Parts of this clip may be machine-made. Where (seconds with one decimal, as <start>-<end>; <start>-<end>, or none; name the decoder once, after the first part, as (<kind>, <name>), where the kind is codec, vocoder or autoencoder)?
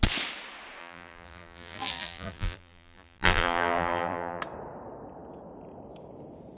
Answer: 0.8-4.4 (vocoder, BigVGAN v2)